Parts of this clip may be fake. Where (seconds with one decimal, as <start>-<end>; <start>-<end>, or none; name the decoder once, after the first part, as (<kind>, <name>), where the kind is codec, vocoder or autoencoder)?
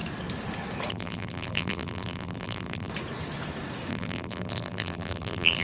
0.9-2.9 (vocoder, BigVGAN v2); 3.9-5.6